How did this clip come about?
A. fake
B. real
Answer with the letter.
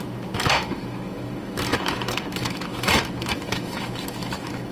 A